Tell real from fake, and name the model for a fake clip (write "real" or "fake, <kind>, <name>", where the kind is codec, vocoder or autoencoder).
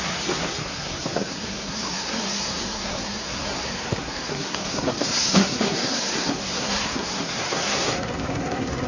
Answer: fake, codec, SNAC